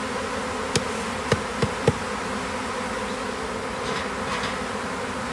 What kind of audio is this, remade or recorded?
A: recorded